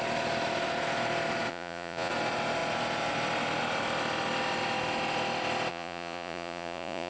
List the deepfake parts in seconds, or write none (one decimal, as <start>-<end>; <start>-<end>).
1.5-2.1; 5.7-7.1